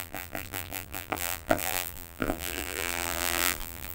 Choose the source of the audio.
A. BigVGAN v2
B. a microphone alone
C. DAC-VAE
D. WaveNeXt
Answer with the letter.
A